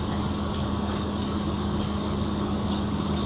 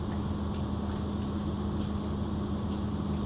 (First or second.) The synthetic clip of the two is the first